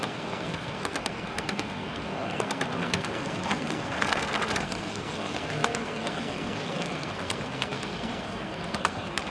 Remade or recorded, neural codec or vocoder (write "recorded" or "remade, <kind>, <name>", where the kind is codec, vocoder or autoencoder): remade, codec, SNAC